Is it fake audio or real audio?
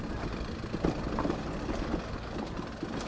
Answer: real